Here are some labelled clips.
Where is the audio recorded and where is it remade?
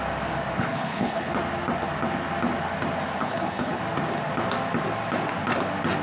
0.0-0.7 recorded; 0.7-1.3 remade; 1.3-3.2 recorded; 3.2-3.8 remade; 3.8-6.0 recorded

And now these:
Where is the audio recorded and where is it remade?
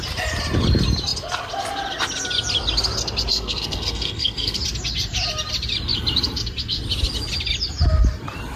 0.0-3.3 recorded; 3.3-4.6 remade; 4.6-8.6 recorded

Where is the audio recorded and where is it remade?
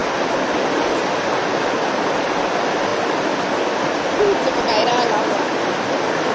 0.0-6.3 recorded